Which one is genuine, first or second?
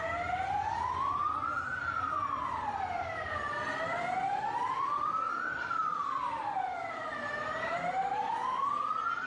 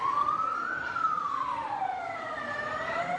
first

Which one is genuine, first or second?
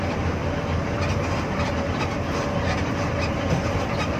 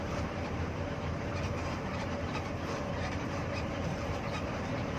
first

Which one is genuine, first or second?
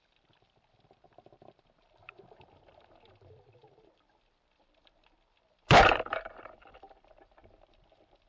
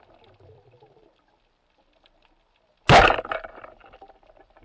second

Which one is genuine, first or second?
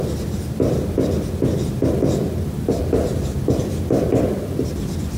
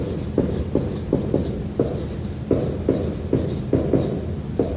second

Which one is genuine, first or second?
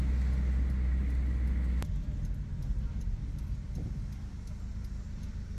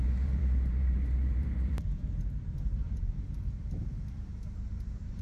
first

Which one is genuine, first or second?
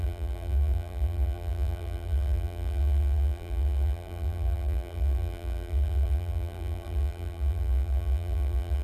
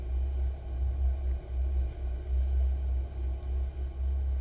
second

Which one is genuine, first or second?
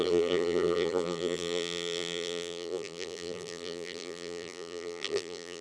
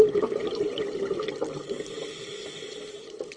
second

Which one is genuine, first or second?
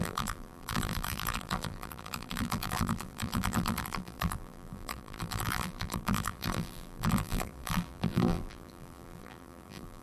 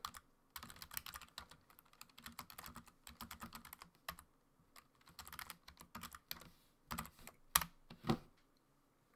second